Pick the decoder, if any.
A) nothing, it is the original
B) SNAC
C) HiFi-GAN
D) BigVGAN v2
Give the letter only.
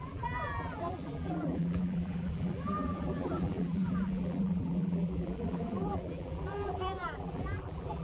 D